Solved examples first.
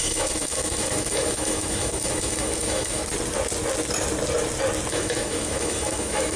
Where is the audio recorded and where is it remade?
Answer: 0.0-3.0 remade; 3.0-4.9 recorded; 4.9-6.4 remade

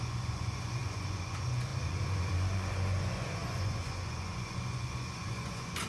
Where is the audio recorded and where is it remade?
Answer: 0.0-5.9 remade

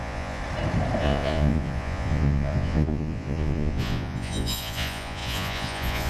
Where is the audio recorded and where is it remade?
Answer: 0.0-0.4 remade; 0.4-1.0 recorded; 1.0-6.1 remade

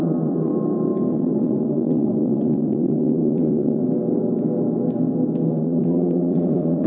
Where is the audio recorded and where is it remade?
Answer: 0.0-0.5 remade; 0.5-1.1 recorded; 1.1-3.8 remade; 3.8-5.5 recorded; 5.5-6.9 remade